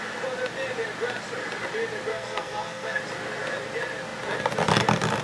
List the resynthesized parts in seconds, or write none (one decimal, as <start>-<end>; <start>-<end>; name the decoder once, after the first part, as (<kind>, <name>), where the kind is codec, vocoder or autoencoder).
2.1-3.0 (codec, SNAC)